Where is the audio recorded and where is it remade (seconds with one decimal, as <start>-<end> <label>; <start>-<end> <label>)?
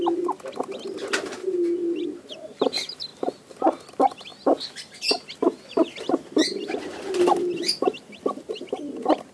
0.0-9.3 recorded